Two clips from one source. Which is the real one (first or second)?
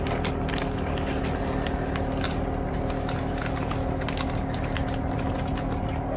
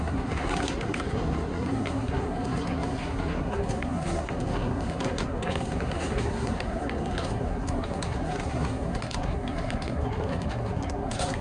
first